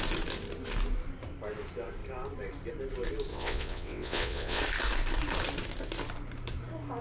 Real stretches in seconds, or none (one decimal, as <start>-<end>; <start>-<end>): 0.0-3.3; 4.6-7.0